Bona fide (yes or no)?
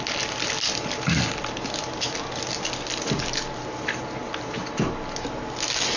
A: yes